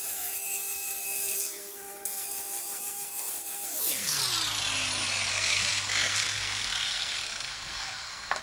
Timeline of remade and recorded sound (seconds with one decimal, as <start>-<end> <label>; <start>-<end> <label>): 0.0-4.2 remade; 4.2-5.3 recorded; 5.3-8.4 remade